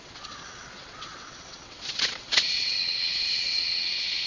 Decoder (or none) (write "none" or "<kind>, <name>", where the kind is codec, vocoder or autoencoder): vocoder, WaveNeXt